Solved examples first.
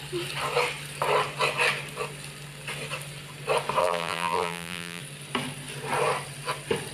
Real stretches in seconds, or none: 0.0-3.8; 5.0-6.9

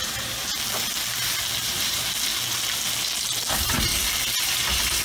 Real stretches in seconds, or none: 0.5-1.6; 2.3-3.5; 3.9-4.4